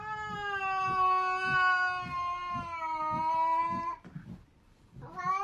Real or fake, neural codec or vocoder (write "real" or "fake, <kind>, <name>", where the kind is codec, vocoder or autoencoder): real